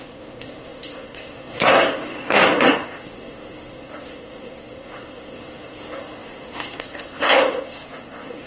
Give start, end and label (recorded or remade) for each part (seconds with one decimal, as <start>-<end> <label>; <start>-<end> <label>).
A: 0.0-8.5 remade